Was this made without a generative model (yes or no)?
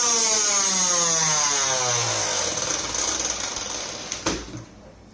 yes